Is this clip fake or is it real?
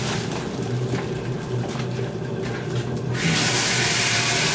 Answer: real